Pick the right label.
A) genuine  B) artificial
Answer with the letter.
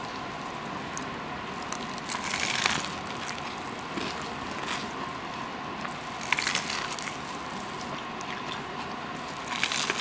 A